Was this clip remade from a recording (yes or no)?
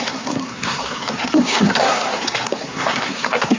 yes